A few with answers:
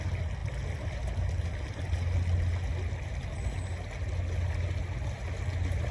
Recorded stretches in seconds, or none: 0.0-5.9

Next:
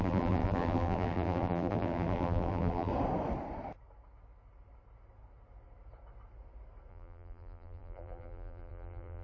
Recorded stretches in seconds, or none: 2.9-6.9

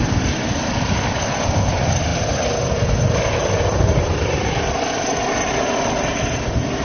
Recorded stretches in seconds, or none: 0.0-6.8

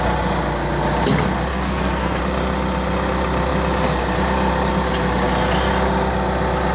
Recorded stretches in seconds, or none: 0.0-1.5; 2.2-6.7

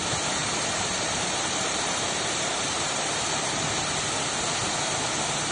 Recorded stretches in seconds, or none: 0.0-0.4; 3.7-5.5

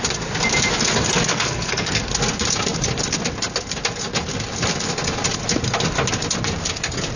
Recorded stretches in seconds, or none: 0.0-1.3; 2.1-7.2

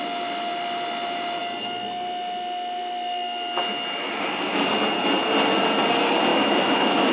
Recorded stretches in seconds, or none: 0.0-6.3

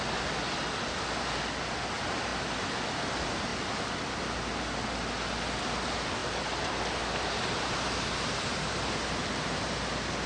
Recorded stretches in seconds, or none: 0.0-10.3